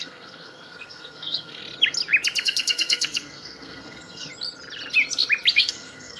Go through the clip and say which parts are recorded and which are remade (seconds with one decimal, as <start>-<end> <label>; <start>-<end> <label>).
0.0-1.6 remade; 1.6-2.4 recorded; 2.4-4.3 remade; 4.3-5.5 recorded; 5.5-6.2 remade